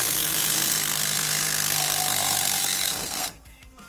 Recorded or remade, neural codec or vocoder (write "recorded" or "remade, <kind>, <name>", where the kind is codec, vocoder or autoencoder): remade, codec, SNAC